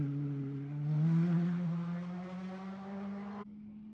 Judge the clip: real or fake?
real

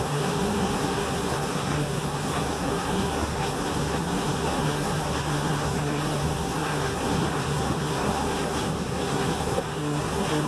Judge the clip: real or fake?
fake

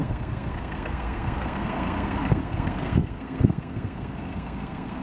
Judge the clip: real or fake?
fake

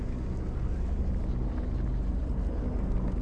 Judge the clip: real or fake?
real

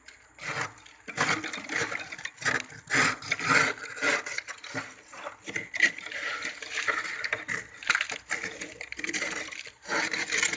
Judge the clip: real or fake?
real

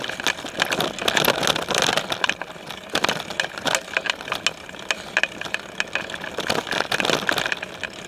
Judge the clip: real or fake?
real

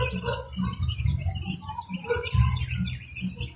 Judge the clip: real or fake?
real